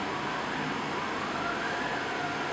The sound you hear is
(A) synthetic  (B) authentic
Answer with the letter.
B